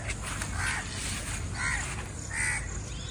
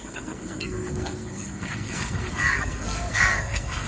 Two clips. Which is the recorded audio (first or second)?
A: first